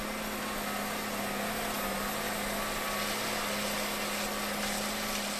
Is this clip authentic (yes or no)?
yes